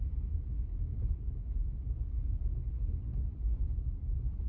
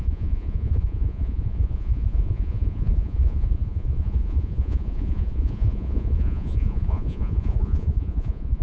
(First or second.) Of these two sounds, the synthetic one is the second